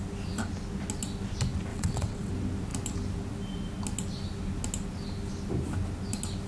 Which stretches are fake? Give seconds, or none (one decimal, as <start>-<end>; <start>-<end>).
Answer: 1.7-2.3